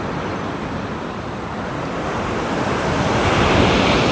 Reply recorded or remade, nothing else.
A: recorded